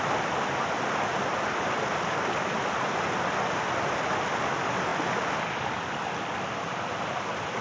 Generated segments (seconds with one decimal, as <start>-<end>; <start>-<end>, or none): none